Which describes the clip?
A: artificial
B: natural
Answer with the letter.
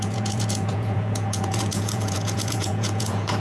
A